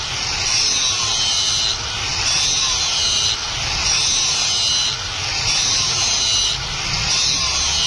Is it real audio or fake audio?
real